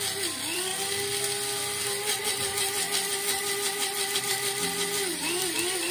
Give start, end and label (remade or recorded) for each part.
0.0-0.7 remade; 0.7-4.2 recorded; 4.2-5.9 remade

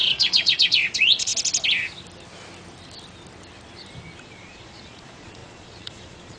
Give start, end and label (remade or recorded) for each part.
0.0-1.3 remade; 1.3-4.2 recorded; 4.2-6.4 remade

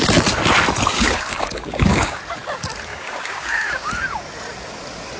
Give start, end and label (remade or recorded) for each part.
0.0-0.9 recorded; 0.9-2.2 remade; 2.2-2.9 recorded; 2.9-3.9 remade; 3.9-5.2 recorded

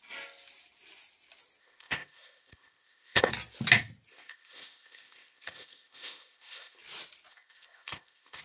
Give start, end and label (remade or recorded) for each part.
0.0-1.6 recorded; 1.6-3.3 remade; 3.3-4.1 recorded; 4.1-6.8 remade; 6.8-7.3 recorded; 7.3-8.4 remade

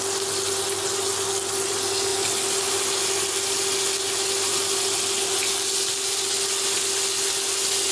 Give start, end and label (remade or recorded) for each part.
0.0-7.9 recorded

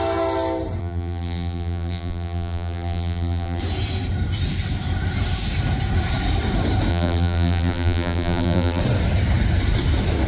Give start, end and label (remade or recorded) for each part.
0.0-0.8 recorded; 0.8-3.6 remade; 3.6-6.9 recorded; 6.9-8.8 remade; 8.8-10.3 recorded

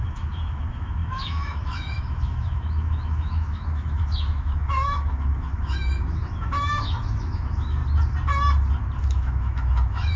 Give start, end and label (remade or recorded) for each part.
0.0-7.8 remade; 7.8-9.0 recorded; 9.0-10.2 remade

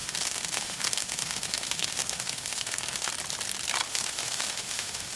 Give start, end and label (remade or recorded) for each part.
0.0-3.1 remade; 3.1-3.9 recorded; 3.9-5.2 remade